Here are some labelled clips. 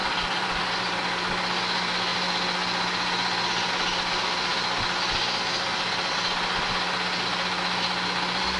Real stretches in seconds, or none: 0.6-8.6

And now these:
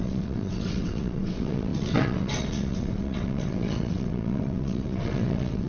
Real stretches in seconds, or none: none

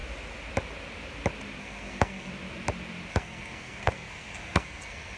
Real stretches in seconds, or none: 0.0-1.6; 2.3-3.1

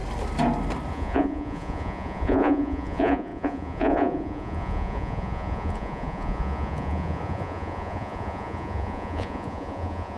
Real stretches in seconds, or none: 0.0-0.9